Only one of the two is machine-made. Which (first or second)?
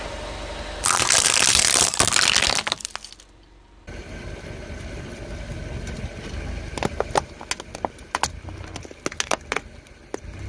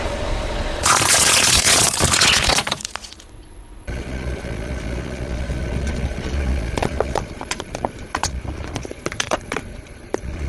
second